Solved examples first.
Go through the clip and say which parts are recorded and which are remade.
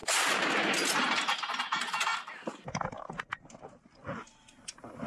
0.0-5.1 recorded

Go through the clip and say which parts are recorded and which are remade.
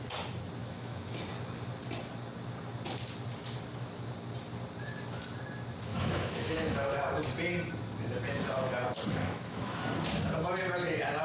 0.0-0.6 recorded; 0.6-1.2 remade; 1.2-5.9 recorded; 5.9-7.2 remade; 7.2-9.2 recorded; 9.2-9.8 remade; 9.8-11.2 recorded